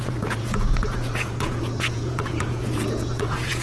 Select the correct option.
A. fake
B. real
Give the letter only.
A